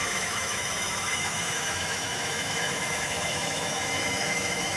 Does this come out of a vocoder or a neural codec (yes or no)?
yes